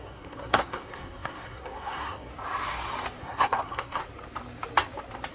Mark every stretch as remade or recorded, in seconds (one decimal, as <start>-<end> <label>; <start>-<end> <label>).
0.0-2.3 remade; 2.3-3.2 recorded; 3.2-4.0 remade; 4.0-5.3 recorded